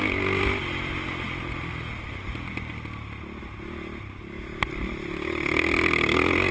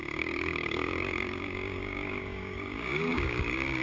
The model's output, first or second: second